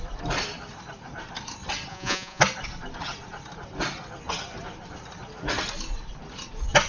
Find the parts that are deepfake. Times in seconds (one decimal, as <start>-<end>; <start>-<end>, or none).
1.9-2.4